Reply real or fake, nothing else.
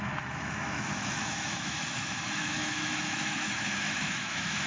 fake